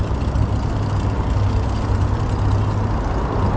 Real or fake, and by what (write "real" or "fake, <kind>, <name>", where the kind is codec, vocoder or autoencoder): real